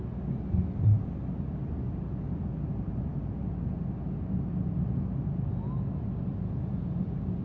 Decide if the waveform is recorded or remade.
recorded